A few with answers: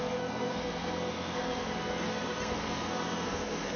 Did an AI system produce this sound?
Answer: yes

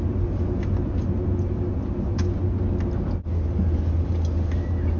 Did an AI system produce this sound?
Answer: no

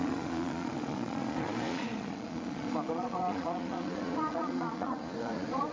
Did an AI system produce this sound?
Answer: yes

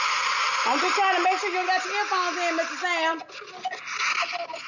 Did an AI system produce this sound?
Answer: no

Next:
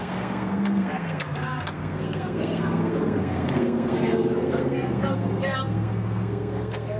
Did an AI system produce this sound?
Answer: yes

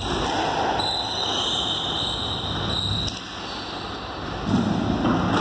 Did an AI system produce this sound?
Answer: no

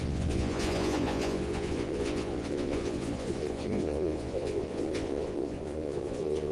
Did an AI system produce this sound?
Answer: yes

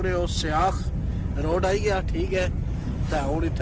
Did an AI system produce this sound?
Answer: no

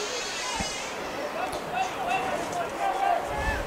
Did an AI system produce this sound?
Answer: no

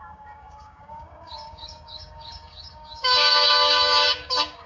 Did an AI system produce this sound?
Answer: yes